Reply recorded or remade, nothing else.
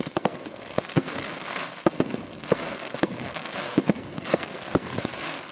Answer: remade